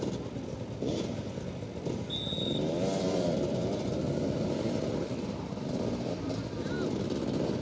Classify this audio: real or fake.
fake